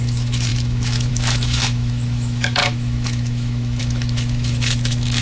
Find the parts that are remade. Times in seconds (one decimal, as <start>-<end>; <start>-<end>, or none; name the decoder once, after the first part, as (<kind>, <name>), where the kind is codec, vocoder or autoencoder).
0.0-5.2 (autoencoder, DAC-VAE)